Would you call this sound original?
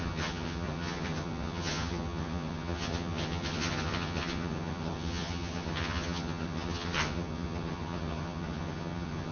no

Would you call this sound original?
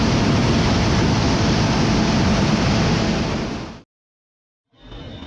yes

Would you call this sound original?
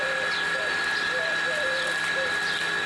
yes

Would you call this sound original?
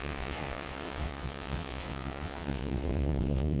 no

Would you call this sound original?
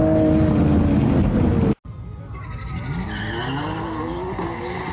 yes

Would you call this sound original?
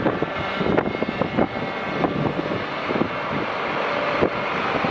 yes